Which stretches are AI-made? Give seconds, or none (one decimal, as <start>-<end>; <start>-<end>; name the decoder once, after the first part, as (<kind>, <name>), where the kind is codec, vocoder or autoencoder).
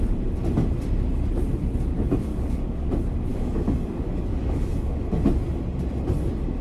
2.3-2.9 (codec, DAC); 3.3-5.0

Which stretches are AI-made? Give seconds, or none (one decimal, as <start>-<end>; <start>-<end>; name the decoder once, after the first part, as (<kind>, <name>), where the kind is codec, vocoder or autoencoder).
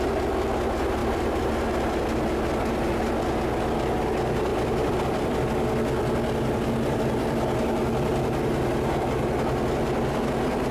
1.0-1.5 (vocoder, BigVGAN v2); 4.5-5.4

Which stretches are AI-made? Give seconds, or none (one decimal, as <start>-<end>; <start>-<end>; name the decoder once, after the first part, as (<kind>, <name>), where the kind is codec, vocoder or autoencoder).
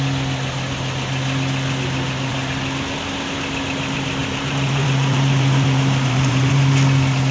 4.2-6.5 (vocoder, BigVGAN v2)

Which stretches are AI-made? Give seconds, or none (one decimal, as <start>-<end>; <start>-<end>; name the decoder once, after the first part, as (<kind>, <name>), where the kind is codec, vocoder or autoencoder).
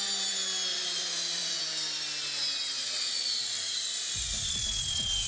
0.7-1.6 (vocoder, Vocos); 2.8-4.5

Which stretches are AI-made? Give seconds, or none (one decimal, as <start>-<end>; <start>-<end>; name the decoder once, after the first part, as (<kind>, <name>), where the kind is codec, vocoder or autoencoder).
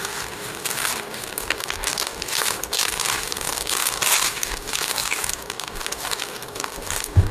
0.0-7.3 (codec, DAC)